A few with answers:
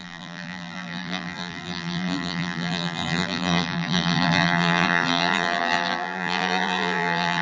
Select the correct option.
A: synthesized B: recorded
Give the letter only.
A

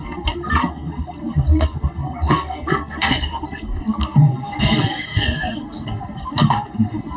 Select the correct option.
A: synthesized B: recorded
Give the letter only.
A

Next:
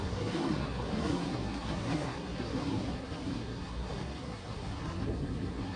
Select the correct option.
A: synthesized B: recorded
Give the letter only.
A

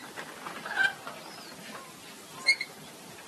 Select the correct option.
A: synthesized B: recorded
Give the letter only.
B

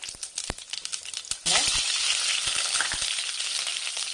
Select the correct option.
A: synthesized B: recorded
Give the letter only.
B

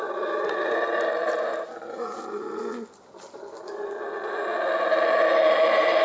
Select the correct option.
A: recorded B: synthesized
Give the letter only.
A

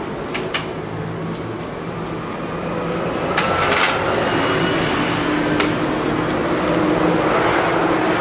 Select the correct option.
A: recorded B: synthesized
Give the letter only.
A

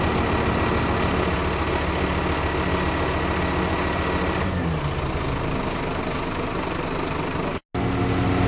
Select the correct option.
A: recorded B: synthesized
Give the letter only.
A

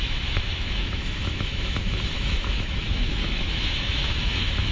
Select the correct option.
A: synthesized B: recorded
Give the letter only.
A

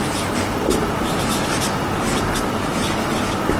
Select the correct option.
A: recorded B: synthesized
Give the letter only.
A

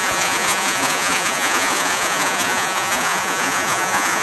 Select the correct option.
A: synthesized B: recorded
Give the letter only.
A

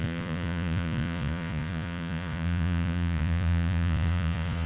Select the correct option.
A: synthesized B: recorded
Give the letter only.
A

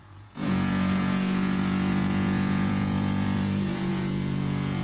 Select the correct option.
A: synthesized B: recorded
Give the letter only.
A